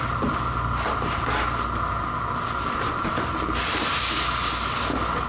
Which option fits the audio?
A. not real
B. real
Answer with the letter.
B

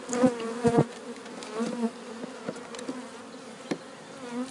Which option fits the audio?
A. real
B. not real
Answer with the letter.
A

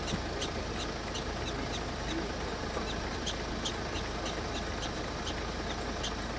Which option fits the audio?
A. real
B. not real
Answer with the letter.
A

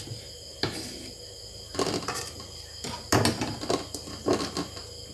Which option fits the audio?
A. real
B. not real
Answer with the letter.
A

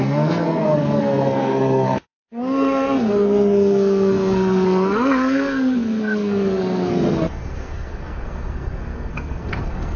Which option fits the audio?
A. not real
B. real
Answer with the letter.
A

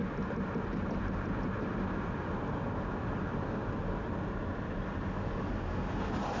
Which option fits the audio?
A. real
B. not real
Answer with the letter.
A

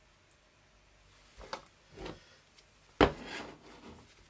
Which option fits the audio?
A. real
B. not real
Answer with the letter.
A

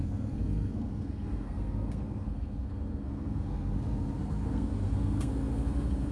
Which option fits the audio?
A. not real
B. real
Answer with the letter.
A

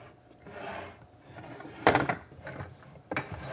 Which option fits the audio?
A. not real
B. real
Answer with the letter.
B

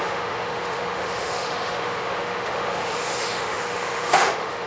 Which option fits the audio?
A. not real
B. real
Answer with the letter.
A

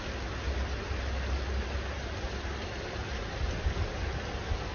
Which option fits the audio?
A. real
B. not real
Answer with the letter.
A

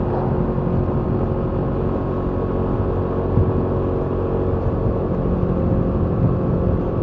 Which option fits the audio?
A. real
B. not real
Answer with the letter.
A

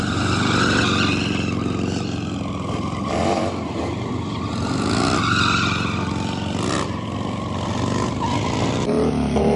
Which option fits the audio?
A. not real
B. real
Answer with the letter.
B